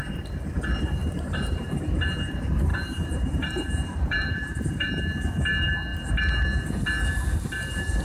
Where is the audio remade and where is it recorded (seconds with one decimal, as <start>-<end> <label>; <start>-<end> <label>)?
0.0-1.0 recorded; 1.0-1.8 remade; 1.8-2.7 recorded; 2.7-5.0 remade; 5.0-8.0 recorded